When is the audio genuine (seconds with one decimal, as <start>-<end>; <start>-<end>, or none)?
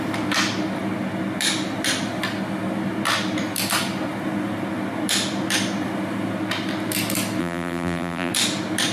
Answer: 0.0-7.4; 8.3-8.9